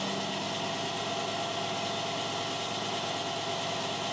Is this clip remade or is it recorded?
recorded